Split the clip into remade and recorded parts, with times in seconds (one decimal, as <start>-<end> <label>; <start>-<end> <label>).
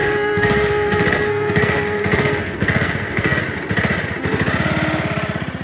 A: 0.0-3.4 remade; 3.4-5.6 recorded